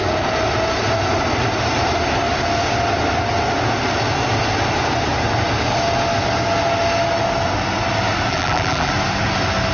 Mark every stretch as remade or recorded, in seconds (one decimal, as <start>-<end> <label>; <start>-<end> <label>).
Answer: 0.0-8.3 recorded; 8.3-8.9 remade; 8.9-9.7 recorded